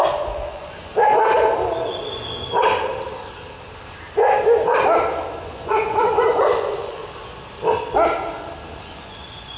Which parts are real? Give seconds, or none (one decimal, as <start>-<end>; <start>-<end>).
0.9-5.4; 7.0-8.8